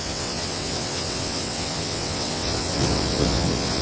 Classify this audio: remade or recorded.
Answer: remade